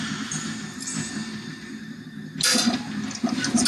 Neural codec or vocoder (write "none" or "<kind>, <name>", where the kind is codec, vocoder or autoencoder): none